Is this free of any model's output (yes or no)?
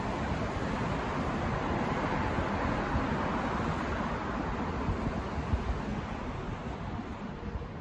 yes